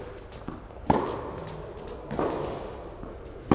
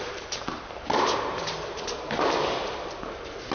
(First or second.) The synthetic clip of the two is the second